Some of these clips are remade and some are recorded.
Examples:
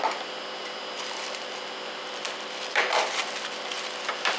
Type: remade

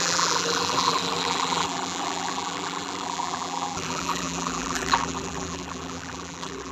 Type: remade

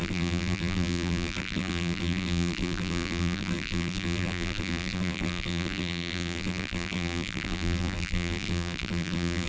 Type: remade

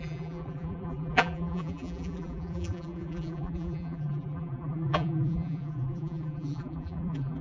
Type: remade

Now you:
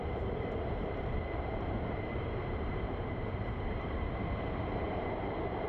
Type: remade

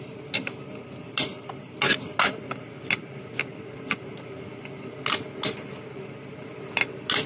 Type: recorded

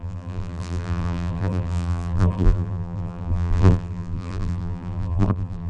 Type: remade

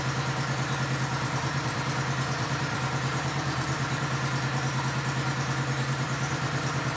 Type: remade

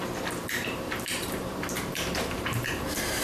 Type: remade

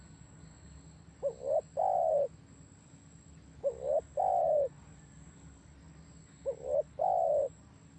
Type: recorded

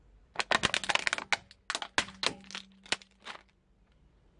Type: recorded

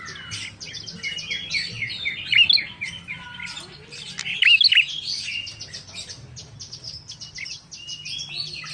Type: recorded